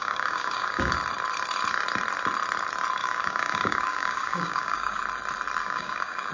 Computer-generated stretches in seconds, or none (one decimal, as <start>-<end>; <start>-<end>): 0.0-0.9; 3.0-5.0; 5.6-6.3